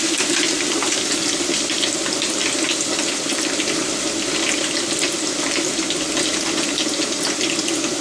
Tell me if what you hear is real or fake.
real